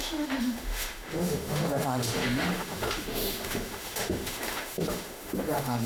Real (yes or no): no